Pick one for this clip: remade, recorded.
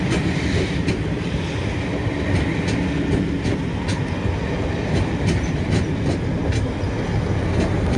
recorded